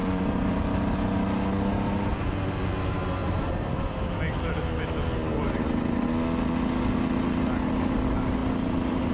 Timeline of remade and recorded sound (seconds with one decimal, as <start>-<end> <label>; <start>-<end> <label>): 0.0-0.6 remade; 0.6-3.2 recorded; 3.2-4.1 remade; 4.1-9.1 recorded